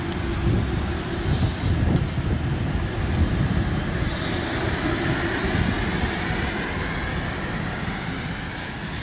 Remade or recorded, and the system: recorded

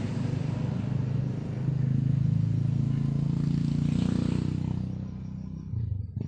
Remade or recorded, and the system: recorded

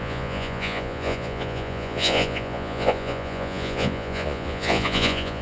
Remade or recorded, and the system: remade, vocoder, Vocos